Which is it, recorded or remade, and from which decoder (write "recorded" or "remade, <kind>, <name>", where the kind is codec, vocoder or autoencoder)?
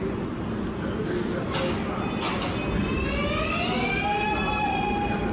recorded